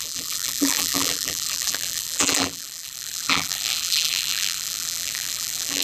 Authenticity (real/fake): fake